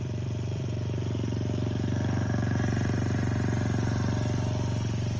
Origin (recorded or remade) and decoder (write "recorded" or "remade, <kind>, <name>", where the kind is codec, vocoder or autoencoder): remade, vocoder, BigVGAN v2